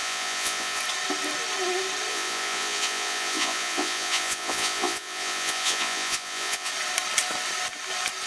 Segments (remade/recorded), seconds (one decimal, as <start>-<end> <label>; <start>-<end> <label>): 0.0-0.8 remade; 0.8-2.1 recorded; 2.1-6.7 remade; 6.7-8.3 recorded